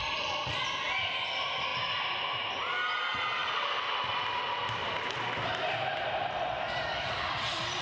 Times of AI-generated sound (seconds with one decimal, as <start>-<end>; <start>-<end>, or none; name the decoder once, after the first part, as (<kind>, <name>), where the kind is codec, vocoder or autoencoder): 0.0-0.5 (vocoder, BigVGAN v2); 3.4-4.2; 4.8-5.7